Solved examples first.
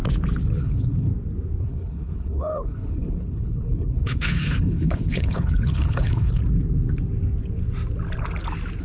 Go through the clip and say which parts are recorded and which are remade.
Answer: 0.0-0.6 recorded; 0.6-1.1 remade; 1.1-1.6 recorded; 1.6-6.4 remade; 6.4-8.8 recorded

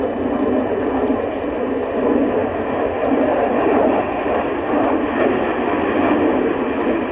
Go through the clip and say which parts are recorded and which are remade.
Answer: 0.0-2.4 recorded; 2.4-5.0 remade; 5.0-7.1 recorded

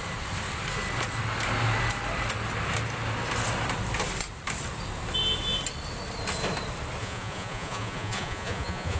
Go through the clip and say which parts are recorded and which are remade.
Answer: 0.0-7.0 recorded; 7.0-9.0 remade

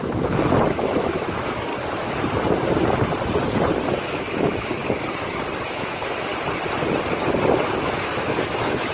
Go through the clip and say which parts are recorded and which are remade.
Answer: 0.0-1.7 remade; 1.7-3.9 recorded; 3.9-4.8 remade; 4.8-5.6 recorded; 5.6-6.3 remade; 6.3-7.8 recorded; 7.8-8.9 remade

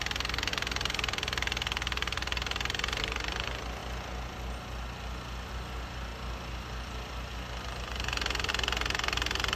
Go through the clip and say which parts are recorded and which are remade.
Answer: 0.0-9.6 recorded

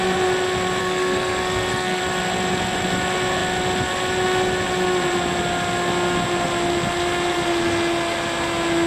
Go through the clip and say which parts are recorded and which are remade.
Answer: 0.0-0.8 recorded; 0.8-2.0 remade; 2.0-8.9 recorded

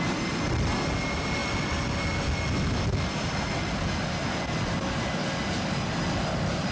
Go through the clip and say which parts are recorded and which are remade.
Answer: 0.0-6.7 recorded